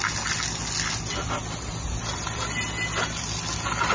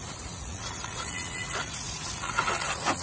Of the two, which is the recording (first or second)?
first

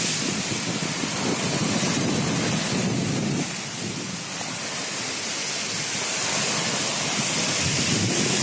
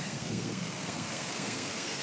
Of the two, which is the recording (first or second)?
first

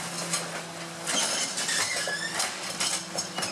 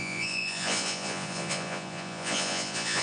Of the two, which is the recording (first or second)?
first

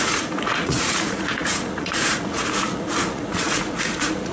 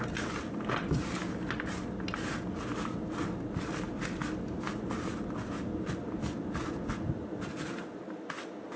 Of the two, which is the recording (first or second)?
second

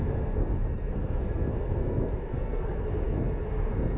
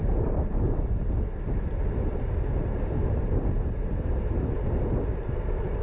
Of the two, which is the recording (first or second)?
second